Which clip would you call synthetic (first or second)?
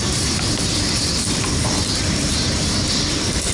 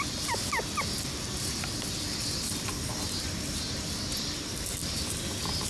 first